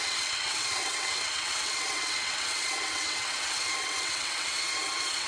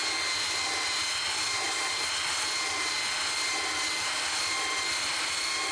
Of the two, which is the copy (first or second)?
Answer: first